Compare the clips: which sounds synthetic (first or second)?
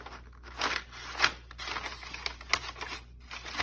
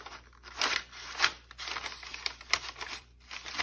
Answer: second